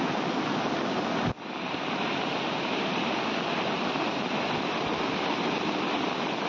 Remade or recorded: recorded